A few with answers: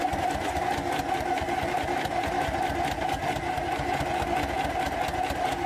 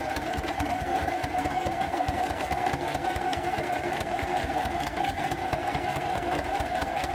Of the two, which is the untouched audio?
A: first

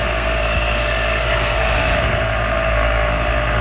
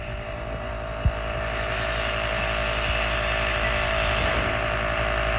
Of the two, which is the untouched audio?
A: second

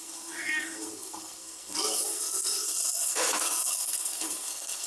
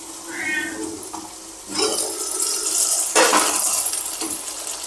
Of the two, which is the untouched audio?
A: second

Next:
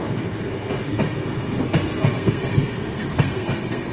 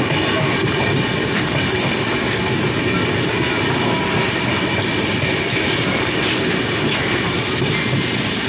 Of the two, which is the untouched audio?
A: second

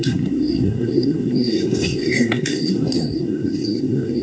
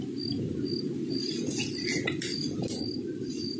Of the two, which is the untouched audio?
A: second